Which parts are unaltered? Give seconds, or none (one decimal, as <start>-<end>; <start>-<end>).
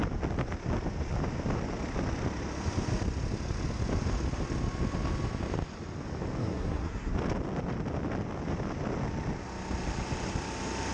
0.0-6.4; 7.1-10.9